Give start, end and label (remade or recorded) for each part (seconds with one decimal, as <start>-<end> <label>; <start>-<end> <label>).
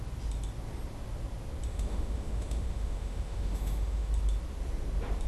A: 0.0-1.7 recorded; 1.7-4.1 remade; 4.1-5.3 recorded